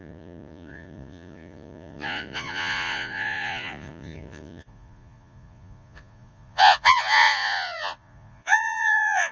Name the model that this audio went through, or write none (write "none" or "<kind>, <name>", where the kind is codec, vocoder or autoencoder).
vocoder, Vocos